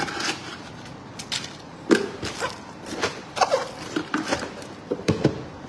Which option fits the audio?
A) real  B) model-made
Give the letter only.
B